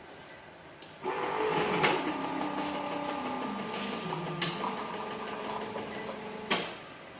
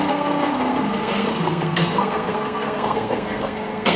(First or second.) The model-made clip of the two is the second